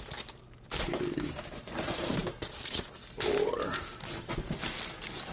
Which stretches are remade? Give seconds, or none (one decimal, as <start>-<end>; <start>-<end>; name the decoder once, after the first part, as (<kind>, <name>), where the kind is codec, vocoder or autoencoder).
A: none